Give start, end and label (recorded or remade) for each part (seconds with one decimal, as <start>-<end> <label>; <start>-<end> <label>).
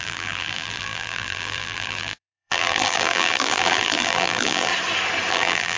0.0-4.7 remade; 4.7-5.3 recorded; 5.3-5.8 remade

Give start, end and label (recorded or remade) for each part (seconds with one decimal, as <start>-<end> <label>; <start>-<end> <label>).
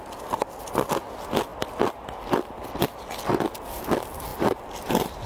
0.0-4.3 recorded; 4.3-5.3 remade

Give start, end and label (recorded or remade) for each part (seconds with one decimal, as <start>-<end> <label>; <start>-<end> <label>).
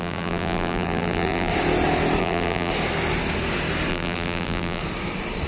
0.0-1.5 remade; 1.5-2.2 recorded; 2.2-2.7 remade; 2.7-3.9 recorded; 3.9-4.8 remade; 4.8-5.5 recorded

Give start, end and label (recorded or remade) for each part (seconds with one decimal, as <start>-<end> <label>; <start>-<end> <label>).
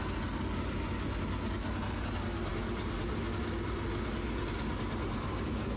0.0-5.8 recorded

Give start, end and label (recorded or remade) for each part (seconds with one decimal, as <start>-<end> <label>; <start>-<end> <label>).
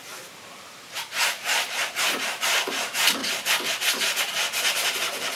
0.0-3.2 remade; 3.2-4.2 recorded; 4.2-5.4 remade